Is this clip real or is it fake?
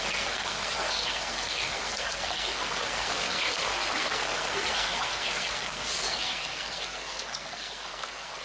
fake